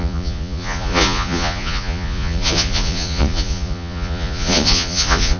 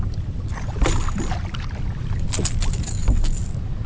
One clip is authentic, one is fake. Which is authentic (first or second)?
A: second